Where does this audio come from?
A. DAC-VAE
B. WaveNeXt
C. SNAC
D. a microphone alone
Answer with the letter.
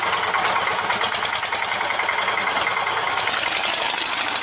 D